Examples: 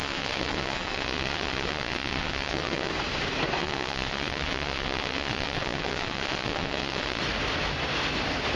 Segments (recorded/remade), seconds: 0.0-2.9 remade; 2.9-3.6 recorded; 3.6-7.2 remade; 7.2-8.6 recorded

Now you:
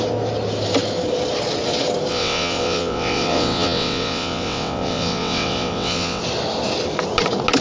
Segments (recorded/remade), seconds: 0.0-2.1 recorded; 2.1-6.2 remade; 6.2-7.6 recorded

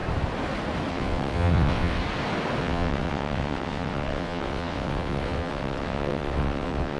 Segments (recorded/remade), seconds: 0.0-0.9 recorded; 0.9-2.0 remade; 2.0-2.6 recorded; 2.6-7.0 remade

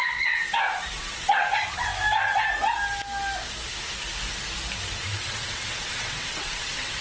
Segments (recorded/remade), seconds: 0.0-0.4 remade; 0.4-1.0 recorded; 1.0-1.9 remade; 1.9-5.0 recorded; 5.0-7.0 remade

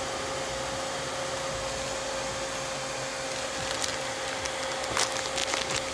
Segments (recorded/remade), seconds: 0.0-5.9 recorded

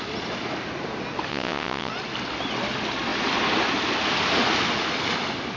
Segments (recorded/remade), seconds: 0.0-1.3 recorded; 1.3-1.9 remade; 1.9-5.6 recorded

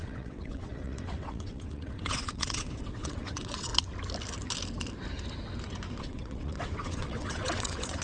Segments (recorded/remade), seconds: 0.0-3.7 remade; 3.7-6.0 recorded; 6.0-8.0 remade